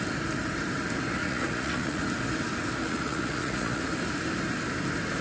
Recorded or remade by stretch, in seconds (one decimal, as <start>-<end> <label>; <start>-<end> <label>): 0.0-1.2 recorded; 1.2-2.0 remade; 2.0-2.8 recorded; 2.8-3.8 remade; 3.8-5.2 recorded